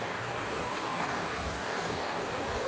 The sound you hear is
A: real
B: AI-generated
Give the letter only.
B